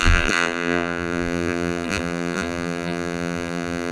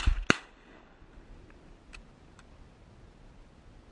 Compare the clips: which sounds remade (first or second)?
first